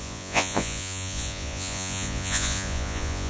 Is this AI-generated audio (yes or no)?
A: yes